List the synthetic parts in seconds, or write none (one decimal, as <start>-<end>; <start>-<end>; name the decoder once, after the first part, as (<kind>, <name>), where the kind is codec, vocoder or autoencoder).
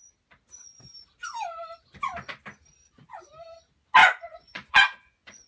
4.0-5.5 (vocoder, Vocos)